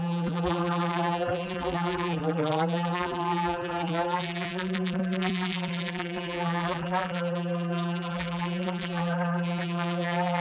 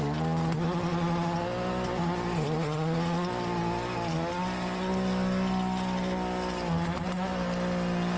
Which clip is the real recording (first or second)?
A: second